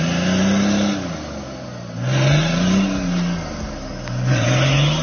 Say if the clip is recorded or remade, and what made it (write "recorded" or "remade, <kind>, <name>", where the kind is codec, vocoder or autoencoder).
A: recorded